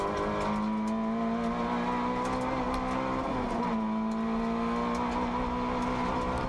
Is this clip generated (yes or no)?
no